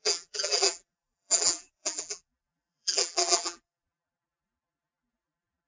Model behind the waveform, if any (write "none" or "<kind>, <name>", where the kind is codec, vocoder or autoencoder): vocoder, BigVGAN v2